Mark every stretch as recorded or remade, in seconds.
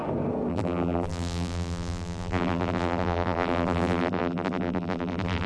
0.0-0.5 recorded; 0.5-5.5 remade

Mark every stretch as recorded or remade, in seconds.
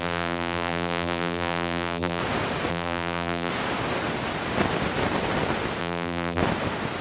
0.0-2.2 remade; 2.2-2.7 recorded; 2.7-3.5 remade; 3.5-5.8 recorded; 5.8-6.4 remade; 6.4-7.0 recorded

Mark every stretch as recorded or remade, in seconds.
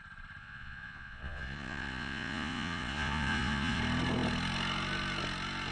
0.0-0.4 recorded; 0.4-3.8 remade; 3.8-5.7 recorded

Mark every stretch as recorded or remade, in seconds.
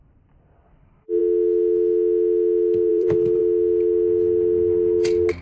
0.0-0.6 recorded; 0.6-1.2 remade; 1.2-2.9 recorded; 2.9-3.4 remade; 3.4-5.4 recorded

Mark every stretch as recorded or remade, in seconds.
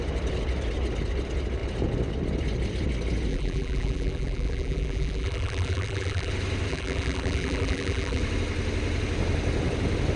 0.0-3.3 recorded; 3.3-6.3 remade; 6.3-6.7 recorded; 6.7-8.2 remade; 8.2-10.2 recorded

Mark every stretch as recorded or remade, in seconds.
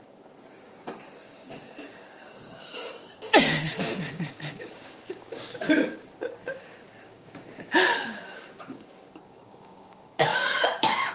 0.0-11.1 remade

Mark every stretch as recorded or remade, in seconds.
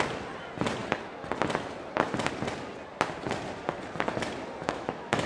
0.0-4.6 recorded; 4.6-5.3 remade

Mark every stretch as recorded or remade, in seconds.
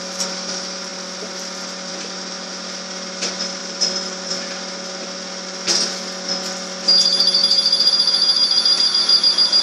0.0-3.6 recorded; 3.6-4.3 remade; 4.3-9.6 recorded